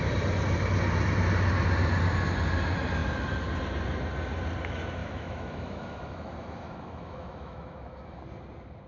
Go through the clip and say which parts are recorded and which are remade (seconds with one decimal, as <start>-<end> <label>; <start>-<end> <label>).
0.0-5.0 recorded; 5.0-8.2 remade; 8.2-8.9 recorded